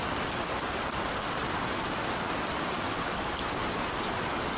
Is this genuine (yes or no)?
yes